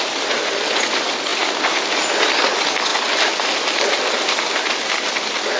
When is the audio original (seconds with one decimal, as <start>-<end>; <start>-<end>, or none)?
0.0-5.6